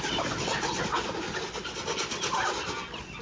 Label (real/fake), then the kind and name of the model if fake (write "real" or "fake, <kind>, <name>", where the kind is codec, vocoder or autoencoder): real